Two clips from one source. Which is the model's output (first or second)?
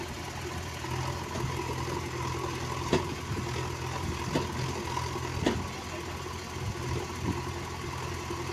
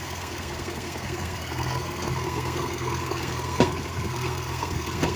second